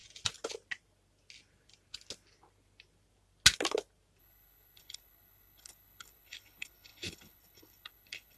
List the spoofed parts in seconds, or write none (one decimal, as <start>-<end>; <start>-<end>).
4.2-8.4